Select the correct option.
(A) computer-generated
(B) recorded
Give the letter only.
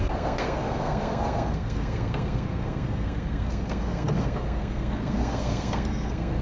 A